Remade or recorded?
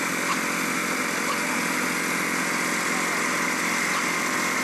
recorded